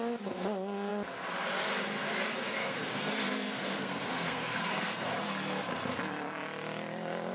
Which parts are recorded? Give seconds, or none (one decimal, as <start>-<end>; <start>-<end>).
0.0-2.6; 5.1-7.3